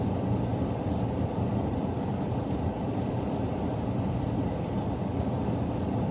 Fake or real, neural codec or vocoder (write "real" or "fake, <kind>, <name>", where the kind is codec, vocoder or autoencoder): fake, vocoder, BigVGAN v2